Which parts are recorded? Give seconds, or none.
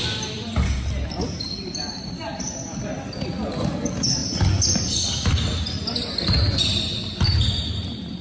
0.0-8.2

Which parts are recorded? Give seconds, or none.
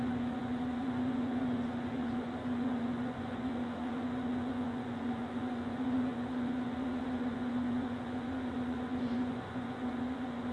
none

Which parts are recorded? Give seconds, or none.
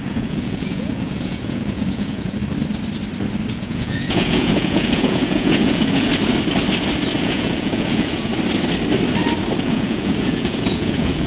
2.4-3.5; 6.1-7.2; 8.3-9.6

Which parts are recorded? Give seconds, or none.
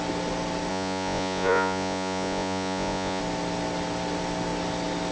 0.0-0.7; 3.2-5.1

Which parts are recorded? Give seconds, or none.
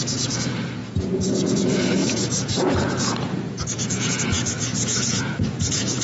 none